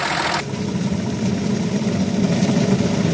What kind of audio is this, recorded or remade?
recorded